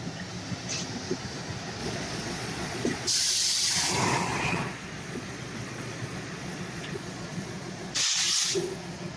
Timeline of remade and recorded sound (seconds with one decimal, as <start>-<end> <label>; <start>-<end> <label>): 0.0-1.8 recorded; 1.8-3.1 remade; 3.1-4.3 recorded; 4.3-9.2 remade